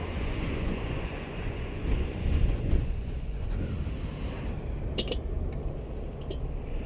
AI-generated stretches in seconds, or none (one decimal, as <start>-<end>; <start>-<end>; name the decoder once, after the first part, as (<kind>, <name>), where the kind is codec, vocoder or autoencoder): 0.0-3.7 (vocoder, Vocos)